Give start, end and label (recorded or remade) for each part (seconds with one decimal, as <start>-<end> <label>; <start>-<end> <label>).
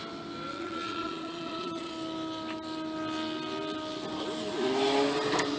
0.0-0.5 recorded; 0.5-1.9 remade; 1.9-5.6 recorded